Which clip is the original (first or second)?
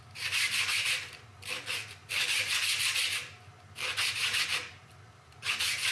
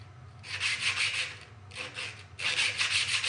second